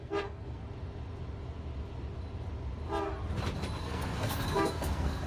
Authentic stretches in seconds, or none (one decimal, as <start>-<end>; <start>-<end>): 0.6-3.8